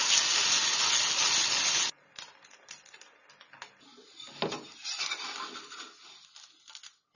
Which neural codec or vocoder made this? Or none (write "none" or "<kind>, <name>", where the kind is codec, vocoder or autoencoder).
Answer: none